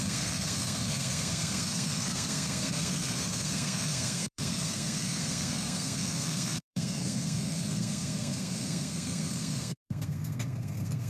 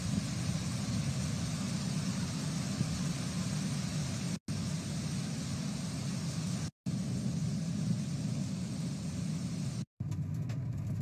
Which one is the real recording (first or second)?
second